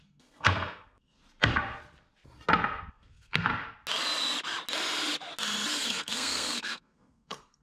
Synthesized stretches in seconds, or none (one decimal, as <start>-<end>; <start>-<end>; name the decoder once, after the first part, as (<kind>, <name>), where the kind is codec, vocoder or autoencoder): 0.0-1.2 (codec, SNAC); 2.9-3.5; 5.7-7.6